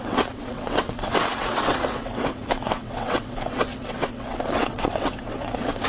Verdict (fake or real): fake